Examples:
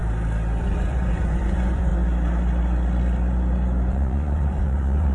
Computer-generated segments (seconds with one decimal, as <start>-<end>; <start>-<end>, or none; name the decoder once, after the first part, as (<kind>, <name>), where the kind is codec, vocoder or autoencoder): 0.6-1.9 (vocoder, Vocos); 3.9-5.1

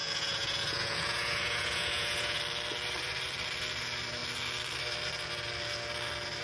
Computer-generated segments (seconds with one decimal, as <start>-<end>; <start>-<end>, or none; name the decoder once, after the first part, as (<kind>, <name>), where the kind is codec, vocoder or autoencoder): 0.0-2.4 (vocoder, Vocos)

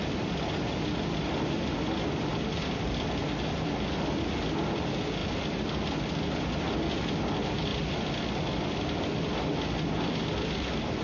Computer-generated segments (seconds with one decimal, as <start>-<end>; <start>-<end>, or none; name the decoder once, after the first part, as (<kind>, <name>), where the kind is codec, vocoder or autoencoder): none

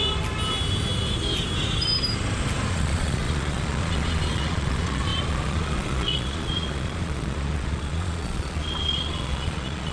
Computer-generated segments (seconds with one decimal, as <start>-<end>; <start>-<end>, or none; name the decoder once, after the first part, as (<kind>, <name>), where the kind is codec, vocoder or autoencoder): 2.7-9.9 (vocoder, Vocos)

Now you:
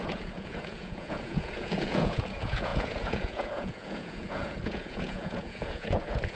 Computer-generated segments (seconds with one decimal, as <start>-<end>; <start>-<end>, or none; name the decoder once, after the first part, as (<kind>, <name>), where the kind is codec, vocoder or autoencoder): 0.0-6.4 (vocoder, Vocos)

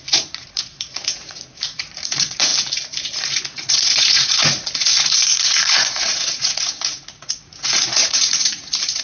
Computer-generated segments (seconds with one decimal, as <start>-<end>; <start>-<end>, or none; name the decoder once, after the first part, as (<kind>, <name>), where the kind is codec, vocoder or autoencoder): 0.0-2.5 (vocoder, Vocos); 3.0-9.0

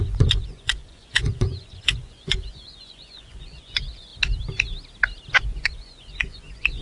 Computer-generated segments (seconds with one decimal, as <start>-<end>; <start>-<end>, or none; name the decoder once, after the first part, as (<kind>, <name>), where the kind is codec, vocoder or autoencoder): 0.0-4.1 (vocoder, Vocos); 5.4-6.8

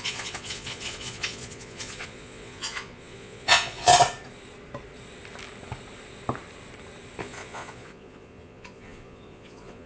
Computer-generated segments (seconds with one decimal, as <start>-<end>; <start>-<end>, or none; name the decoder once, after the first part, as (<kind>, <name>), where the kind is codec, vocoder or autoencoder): 0.0-3.9 (vocoder, Vocos); 7.2-9.9